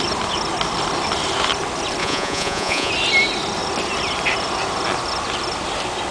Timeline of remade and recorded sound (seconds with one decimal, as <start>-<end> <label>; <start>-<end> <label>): 0.0-2.0 recorded; 2.0-2.9 remade; 2.9-6.1 recorded

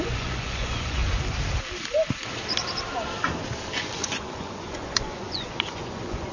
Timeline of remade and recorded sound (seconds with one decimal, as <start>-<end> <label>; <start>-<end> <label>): 0.0-1.0 remade; 1.0-3.7 recorded; 3.7-6.3 remade